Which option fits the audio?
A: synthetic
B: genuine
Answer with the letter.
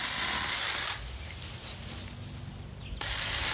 B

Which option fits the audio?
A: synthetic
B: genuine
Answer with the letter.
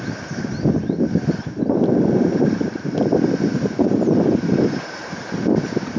B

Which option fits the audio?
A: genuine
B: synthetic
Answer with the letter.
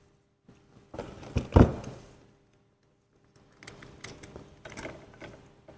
A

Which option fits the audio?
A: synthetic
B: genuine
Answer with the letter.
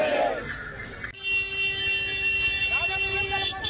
B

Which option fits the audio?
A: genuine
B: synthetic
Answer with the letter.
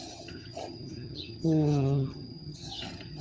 B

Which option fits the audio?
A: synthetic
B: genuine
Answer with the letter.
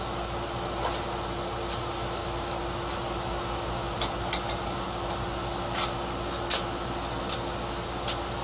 B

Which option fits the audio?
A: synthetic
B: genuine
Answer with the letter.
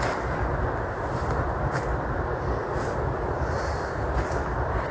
B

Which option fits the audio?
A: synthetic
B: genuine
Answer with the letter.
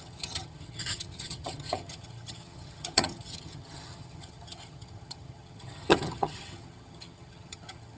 A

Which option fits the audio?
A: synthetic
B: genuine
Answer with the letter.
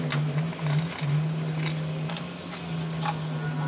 B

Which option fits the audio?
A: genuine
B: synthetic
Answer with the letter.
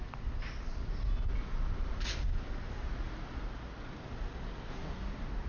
A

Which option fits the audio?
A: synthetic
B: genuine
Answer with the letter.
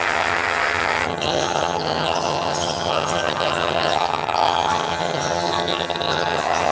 A